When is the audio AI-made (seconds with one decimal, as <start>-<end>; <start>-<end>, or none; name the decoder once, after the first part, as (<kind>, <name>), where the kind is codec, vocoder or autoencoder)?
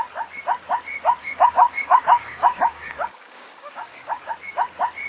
1.2-4.3 (codec, DAC)